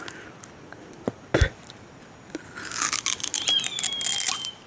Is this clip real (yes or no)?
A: yes